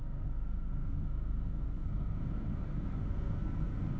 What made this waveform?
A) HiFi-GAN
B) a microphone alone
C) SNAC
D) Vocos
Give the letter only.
C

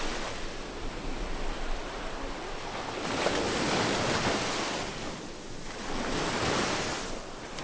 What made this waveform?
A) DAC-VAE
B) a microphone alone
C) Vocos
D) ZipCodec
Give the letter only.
B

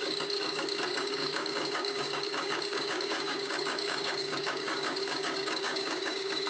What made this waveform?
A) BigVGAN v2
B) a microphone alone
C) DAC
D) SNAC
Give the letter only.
C